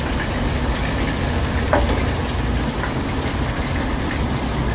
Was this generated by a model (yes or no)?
no